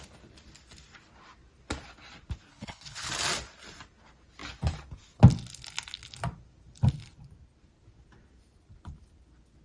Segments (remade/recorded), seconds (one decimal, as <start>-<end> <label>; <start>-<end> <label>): 0.0-2.5 recorded; 2.5-3.1 remade; 3.1-9.6 recorded